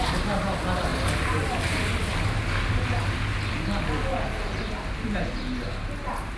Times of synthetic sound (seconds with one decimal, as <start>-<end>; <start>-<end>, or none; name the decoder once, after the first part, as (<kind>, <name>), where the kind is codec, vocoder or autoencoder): none